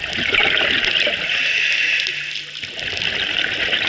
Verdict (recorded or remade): recorded